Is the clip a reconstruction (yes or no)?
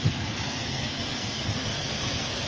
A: yes